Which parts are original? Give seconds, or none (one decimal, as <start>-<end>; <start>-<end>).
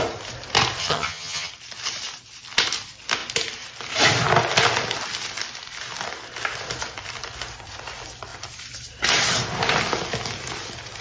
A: 0.0-0.8; 1.5-11.0